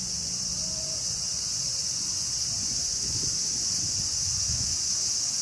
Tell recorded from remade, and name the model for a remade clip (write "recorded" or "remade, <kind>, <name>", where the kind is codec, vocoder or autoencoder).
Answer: remade, vocoder, Vocos